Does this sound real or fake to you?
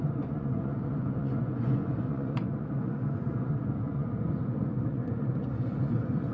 fake